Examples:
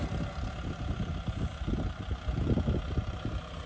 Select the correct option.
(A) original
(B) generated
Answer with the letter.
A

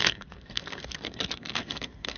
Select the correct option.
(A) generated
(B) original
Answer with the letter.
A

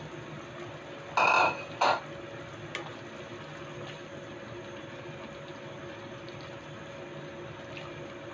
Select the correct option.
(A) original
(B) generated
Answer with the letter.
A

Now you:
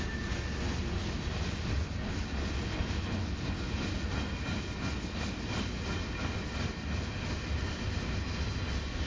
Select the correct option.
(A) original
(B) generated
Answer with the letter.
A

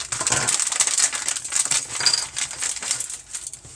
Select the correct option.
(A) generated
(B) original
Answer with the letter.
B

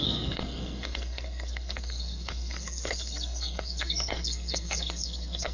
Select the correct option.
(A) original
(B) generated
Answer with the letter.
B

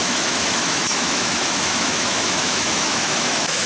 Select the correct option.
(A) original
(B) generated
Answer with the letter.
B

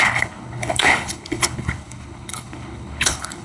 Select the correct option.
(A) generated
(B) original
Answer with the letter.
A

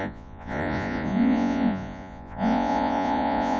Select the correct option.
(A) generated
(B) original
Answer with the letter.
A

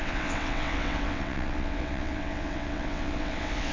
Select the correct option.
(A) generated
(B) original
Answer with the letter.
A